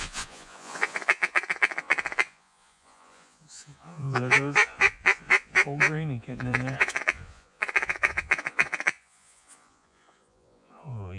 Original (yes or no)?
no